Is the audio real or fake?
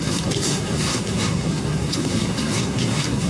fake